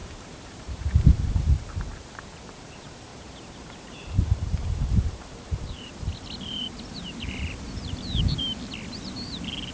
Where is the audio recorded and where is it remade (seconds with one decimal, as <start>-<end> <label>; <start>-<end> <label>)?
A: 0.0-1.5 remade; 1.5-3.1 recorded; 3.1-6.0 remade; 6.0-9.7 recorded